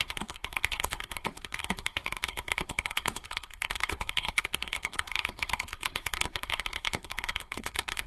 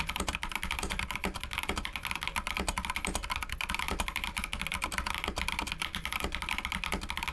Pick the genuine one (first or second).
second